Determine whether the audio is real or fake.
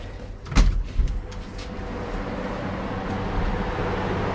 real